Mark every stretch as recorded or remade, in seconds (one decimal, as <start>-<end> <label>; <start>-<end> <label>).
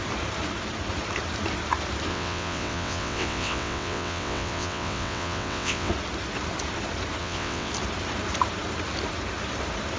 0.0-2.1 recorded; 2.1-5.9 remade; 5.9-7.2 recorded; 7.2-7.7 remade; 7.7-10.0 recorded